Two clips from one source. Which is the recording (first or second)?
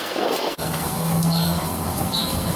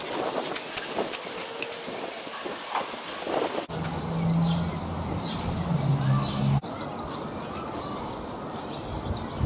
second